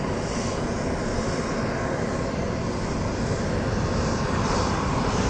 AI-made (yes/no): no